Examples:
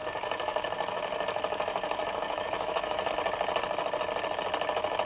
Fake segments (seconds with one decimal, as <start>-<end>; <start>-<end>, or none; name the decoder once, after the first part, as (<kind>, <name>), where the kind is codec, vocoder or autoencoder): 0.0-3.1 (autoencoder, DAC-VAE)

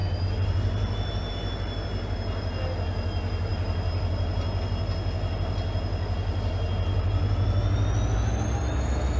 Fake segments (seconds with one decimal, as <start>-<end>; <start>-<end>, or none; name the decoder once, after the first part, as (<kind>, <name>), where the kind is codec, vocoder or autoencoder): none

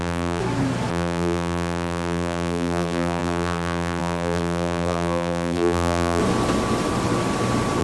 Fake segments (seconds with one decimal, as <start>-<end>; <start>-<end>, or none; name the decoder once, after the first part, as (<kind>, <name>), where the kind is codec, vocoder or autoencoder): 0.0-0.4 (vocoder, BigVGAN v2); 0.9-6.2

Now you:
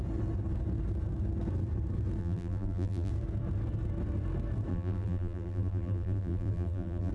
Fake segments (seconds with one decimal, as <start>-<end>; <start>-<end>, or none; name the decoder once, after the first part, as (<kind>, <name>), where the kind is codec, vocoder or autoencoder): 2.2-3.1 (vocoder, BigVGAN v2); 4.7-7.1